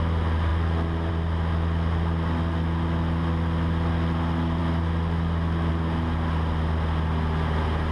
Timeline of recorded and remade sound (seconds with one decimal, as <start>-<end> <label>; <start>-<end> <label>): 0.0-7.9 recorded